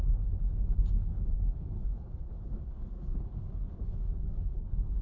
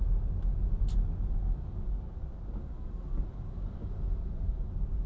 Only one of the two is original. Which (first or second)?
second